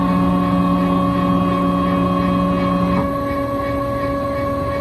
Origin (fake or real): real